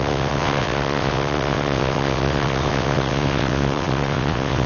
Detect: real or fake fake